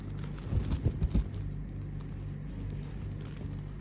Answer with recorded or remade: recorded